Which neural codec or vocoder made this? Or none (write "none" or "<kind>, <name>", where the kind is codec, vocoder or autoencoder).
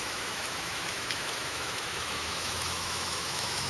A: autoencoder, DAC-VAE